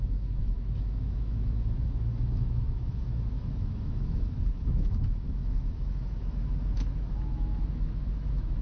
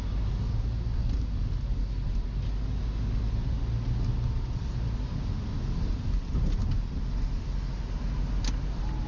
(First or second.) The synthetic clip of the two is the first